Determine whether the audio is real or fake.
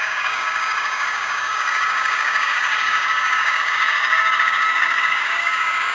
fake